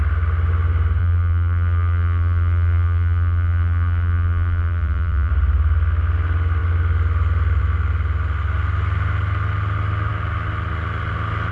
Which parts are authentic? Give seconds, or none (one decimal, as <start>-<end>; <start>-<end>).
0.0-1.0; 5.3-11.5